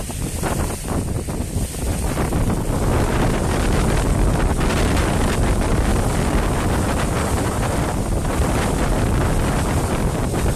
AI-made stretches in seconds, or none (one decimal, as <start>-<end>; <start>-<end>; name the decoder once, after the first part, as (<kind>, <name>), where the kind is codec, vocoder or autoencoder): none